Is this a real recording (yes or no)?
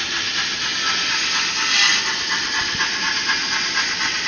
yes